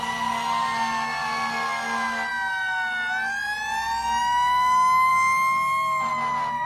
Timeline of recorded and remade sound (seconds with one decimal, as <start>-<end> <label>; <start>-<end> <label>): 0.0-6.7 recorded